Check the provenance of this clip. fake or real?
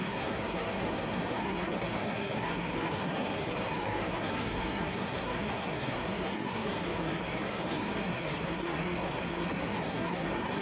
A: fake